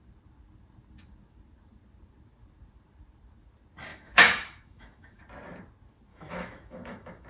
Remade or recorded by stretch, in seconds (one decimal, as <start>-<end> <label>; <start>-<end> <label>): 0.0-3.9 recorded; 3.9-5.2 remade; 5.2-6.1 recorded; 6.1-7.3 remade